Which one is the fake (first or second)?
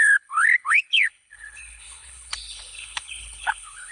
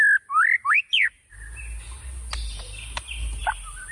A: first